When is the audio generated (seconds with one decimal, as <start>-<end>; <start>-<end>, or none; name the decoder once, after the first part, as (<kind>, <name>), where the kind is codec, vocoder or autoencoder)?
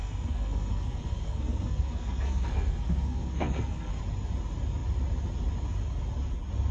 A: 0.0-4.0 (codec, SNAC)